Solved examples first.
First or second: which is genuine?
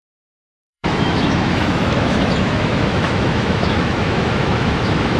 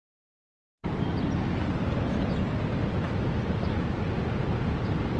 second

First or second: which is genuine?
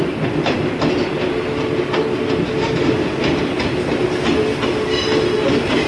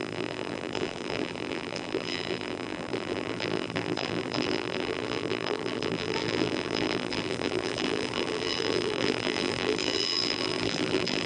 first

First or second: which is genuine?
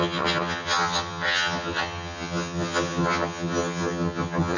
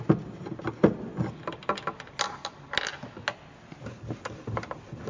second